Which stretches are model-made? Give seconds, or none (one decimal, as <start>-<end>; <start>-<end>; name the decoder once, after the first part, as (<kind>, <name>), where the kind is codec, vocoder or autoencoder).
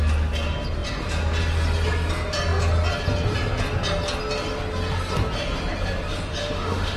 6.4-7.0 (autoencoder, DAC-VAE)